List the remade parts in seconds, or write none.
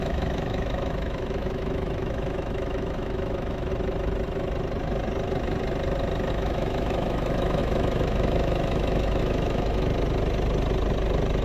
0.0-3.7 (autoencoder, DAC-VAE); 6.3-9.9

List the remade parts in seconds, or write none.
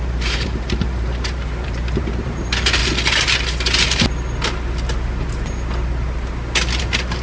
0.0-2.8 (vocoder, BigVGAN v2); 6.8-7.2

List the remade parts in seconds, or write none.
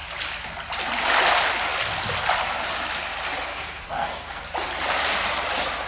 3.5-4.4 (codec, SNAC)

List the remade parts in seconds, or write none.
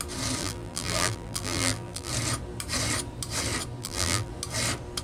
0.4-2.1 (vocoder, BigVGAN v2); 3.8-4.3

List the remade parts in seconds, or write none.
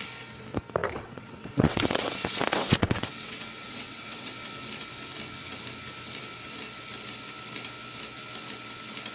0.8-4.3 (vocoder, WaveNeXt)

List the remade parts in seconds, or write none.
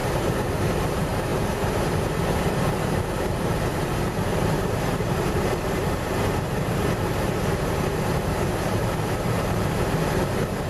0.0-1.3 (vocoder, BigVGAN v2); 2.3-10.7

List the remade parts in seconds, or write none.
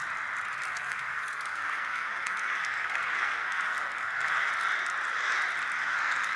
0.7-4.5 (codec, SNAC); 5.8-6.4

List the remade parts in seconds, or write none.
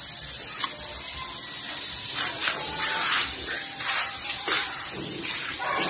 2.4-5.9 (vocoder, BigVGAN v2)